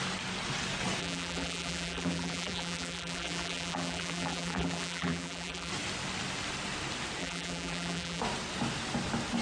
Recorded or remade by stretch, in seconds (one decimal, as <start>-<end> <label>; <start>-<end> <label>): 0.0-1.0 recorded; 1.0-5.7 remade; 5.7-7.2 recorded; 7.2-8.2 remade; 8.2-9.4 recorded